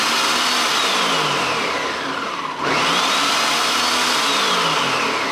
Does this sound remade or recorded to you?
recorded